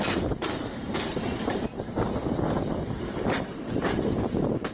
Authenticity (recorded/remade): remade